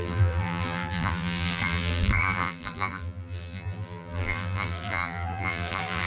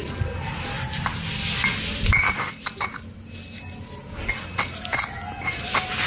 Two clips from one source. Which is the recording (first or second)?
second